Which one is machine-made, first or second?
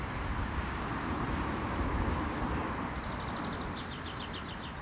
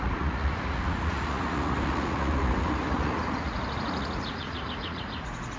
second